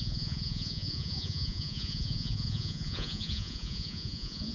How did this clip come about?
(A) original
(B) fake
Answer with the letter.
B